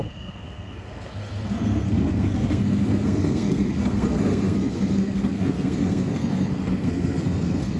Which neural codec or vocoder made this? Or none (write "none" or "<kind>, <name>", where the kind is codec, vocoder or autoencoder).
codec, SNAC